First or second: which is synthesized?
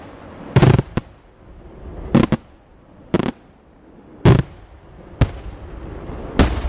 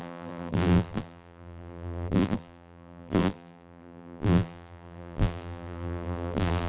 second